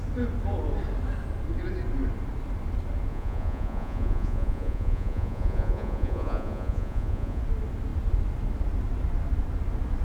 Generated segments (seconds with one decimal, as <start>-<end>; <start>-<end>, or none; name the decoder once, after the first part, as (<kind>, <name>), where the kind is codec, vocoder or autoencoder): 3.1-7.4 (vocoder, Vocos)